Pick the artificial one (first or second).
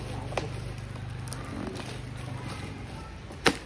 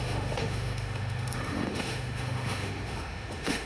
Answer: second